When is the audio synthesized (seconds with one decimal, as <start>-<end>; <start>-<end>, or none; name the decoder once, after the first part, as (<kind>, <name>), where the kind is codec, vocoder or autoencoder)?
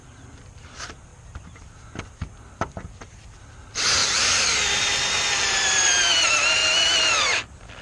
0.0-4.0 (vocoder, BigVGAN v2); 5.3-6.6; 7.2-7.8